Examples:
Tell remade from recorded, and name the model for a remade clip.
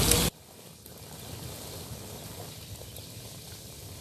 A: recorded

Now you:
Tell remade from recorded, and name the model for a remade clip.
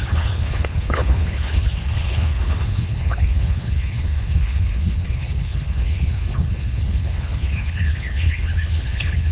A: remade, codec, HILCodec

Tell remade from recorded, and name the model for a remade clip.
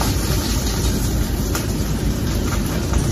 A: remade, vocoder, BigVGAN v2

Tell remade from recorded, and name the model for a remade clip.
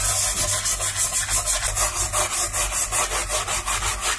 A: recorded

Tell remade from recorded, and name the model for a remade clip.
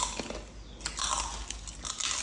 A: recorded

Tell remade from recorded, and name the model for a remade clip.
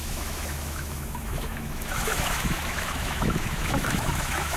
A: remade, autoencoder, DAC-VAE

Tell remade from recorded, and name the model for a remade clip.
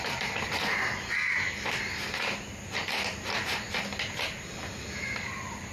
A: recorded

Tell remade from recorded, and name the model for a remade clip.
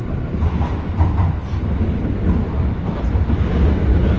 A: recorded